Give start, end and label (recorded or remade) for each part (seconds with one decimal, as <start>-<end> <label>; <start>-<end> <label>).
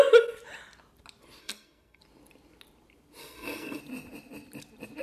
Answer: 0.0-1.4 recorded; 1.4-2.0 remade; 2.0-3.2 recorded; 3.2-3.8 remade; 3.8-5.0 recorded